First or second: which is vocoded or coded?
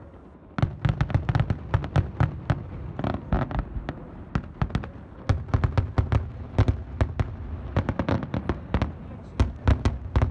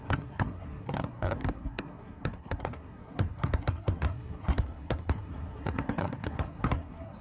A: second